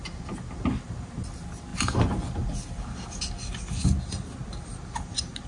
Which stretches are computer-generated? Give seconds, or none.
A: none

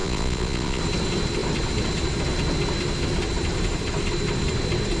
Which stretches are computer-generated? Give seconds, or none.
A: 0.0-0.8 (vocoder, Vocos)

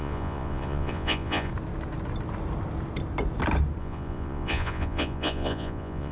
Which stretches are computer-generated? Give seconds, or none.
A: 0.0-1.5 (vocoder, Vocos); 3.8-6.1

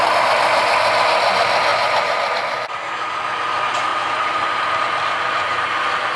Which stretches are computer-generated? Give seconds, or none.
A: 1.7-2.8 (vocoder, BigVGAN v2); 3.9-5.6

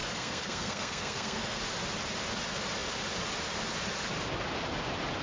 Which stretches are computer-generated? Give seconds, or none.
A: 0.0-1.6 (codec, SNAC)

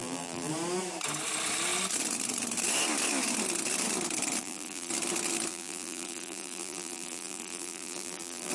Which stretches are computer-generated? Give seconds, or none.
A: 0.0-0.5 (vocoder, BigVGAN v2); 4.4-4.9; 5.5-8.5

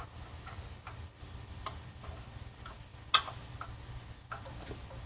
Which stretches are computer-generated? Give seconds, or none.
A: none